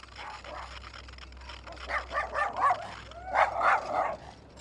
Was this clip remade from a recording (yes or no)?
no